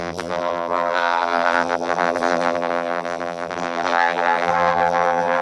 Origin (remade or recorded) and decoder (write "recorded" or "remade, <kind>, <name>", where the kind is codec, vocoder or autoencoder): remade, vocoder, BigVGAN v2